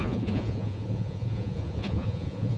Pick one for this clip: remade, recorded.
remade